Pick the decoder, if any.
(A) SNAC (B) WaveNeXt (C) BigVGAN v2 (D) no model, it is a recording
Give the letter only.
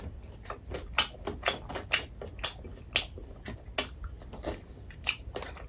D